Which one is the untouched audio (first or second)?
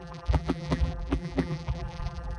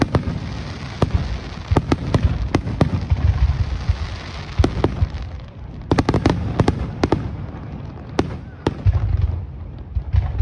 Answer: second